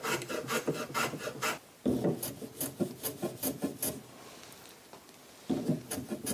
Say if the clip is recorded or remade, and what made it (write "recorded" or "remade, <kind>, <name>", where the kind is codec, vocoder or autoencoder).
recorded